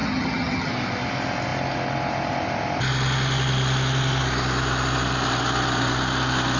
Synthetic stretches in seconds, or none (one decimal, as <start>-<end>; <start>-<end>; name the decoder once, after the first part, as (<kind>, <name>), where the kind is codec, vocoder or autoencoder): 0.0-0.7 (vocoder, HiFi-GAN)